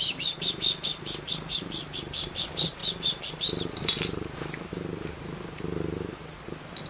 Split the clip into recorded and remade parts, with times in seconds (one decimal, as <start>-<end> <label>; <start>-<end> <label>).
0.0-6.9 recorded